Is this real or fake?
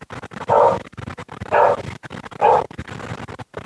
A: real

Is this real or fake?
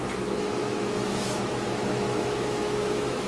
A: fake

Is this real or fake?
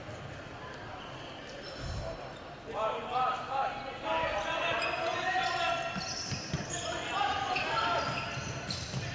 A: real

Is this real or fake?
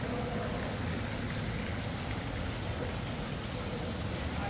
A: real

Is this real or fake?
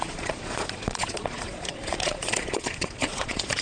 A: fake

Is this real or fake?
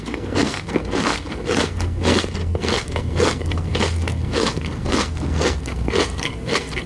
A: fake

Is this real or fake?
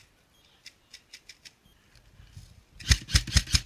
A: real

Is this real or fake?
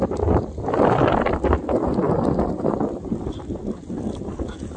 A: real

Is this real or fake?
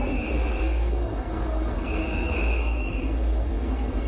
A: fake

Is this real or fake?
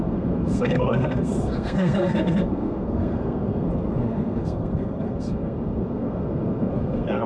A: fake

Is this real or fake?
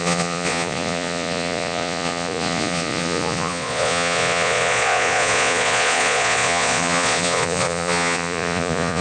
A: fake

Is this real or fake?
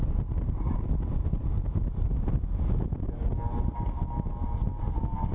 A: real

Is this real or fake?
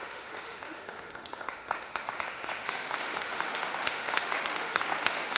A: fake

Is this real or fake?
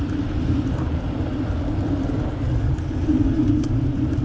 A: real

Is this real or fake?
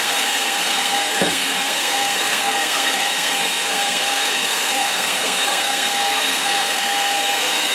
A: fake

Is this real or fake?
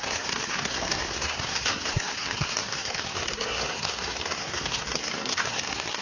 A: fake